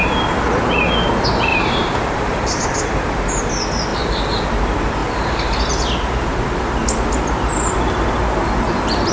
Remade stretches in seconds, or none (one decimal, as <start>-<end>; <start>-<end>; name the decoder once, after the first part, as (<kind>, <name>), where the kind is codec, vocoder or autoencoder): 1.5-2.6 (vocoder, BigVGAN v2); 3.9-4.5; 5.0-5.6